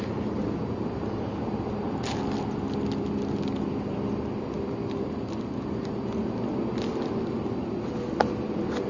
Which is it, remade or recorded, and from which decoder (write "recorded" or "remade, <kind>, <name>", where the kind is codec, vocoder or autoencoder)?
recorded